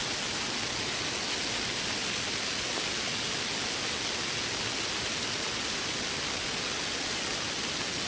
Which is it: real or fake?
real